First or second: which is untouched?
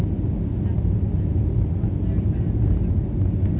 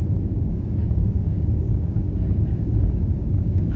first